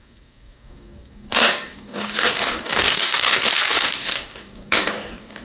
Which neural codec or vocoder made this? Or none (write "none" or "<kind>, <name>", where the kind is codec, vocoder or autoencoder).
codec, DAC